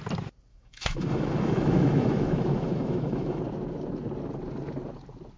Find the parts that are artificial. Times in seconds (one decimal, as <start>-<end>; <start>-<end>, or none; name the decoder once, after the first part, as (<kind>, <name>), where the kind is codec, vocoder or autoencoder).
0.5-3.4 (autoencoder, DAC-VAE)